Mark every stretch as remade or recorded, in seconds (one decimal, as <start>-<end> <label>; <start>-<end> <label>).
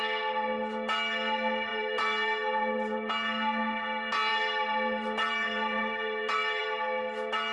0.0-1.7 recorded; 1.7-3.1 remade; 3.1-4.3 recorded; 4.3-6.6 remade; 6.6-7.5 recorded